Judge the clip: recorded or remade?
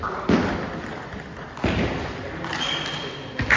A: recorded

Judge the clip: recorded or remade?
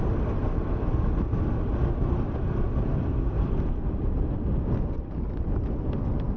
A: recorded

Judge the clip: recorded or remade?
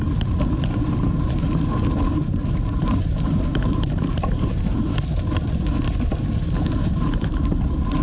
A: remade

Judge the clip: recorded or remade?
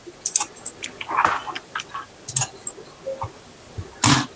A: recorded